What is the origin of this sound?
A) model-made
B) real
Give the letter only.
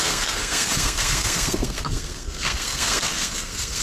A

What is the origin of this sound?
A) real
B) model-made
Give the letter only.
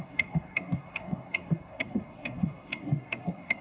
B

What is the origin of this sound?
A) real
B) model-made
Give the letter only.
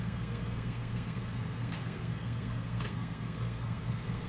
B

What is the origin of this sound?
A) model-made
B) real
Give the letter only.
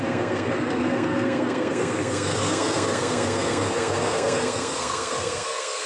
A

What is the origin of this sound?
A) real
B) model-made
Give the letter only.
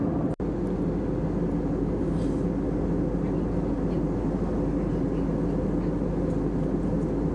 A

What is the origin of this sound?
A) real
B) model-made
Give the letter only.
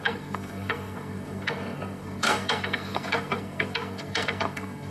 B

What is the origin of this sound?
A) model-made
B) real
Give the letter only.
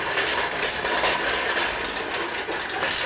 B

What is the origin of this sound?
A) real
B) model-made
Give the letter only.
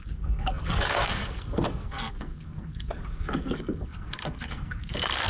B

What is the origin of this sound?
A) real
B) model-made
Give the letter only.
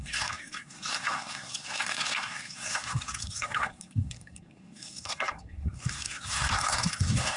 B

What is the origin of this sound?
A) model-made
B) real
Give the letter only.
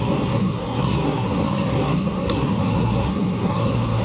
A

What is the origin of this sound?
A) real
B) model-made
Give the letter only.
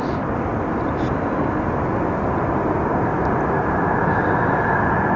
A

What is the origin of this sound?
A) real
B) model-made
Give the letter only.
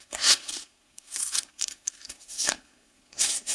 B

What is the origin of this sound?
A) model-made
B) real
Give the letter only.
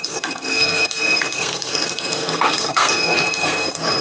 A